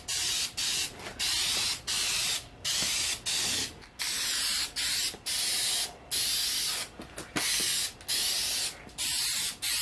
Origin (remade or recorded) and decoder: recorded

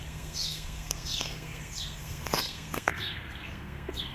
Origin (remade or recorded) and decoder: remade, codec, SNAC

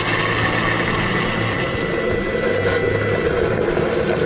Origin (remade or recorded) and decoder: recorded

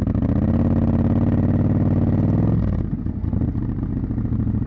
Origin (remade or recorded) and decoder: recorded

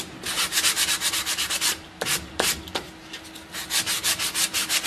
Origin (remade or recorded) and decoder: recorded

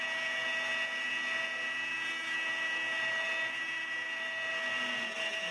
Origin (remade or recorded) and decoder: recorded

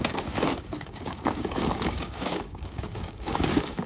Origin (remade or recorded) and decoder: remade, codec, DAC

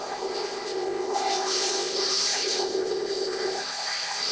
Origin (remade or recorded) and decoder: remade, codec, ZipCodec